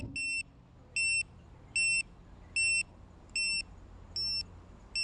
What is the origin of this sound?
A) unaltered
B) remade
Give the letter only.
A